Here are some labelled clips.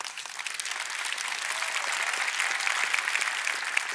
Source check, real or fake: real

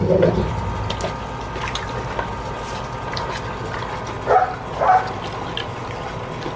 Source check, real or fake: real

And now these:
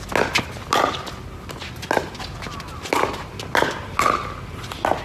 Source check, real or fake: real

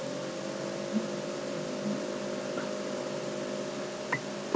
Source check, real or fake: real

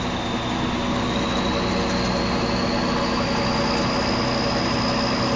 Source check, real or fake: real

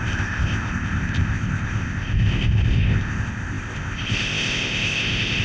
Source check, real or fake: fake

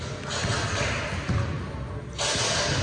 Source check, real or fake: real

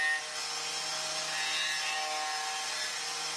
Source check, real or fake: real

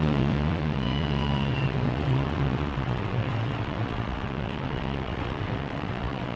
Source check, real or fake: fake